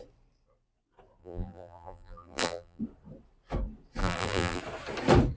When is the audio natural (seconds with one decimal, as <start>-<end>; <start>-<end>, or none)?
0.0-1.2; 2.8-4.0; 4.6-5.4